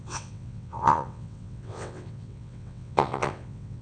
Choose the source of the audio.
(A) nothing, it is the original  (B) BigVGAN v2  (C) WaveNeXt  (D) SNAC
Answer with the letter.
C